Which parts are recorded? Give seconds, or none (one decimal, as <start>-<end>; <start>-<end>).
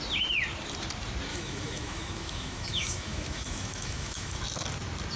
0.0-1.3; 4.4-5.2